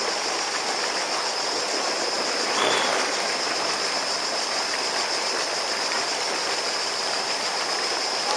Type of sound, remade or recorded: recorded